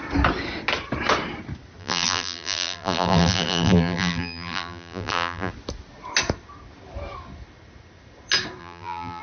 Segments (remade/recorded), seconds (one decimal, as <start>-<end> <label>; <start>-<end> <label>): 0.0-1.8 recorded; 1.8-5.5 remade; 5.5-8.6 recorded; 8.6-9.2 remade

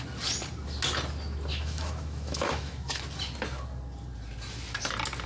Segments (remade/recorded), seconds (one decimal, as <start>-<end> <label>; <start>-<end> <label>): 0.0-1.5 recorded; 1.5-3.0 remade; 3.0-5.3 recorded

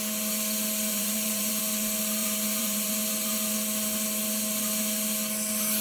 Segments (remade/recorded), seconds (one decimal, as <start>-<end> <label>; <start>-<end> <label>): 0.0-0.9 recorded; 0.9-1.6 remade; 1.6-2.2 recorded; 2.2-2.9 remade; 2.9-5.8 recorded

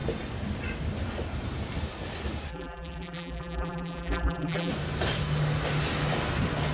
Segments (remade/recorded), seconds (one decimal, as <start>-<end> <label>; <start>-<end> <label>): 0.0-2.5 recorded; 2.5-4.7 remade; 4.7-6.7 recorded